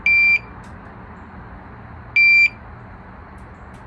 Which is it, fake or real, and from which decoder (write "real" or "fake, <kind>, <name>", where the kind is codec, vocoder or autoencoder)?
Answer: real